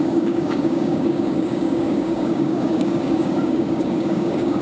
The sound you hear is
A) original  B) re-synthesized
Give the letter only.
B